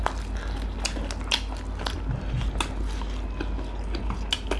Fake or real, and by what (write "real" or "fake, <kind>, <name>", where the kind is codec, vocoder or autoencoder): real